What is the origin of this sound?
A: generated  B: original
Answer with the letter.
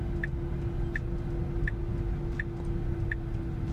B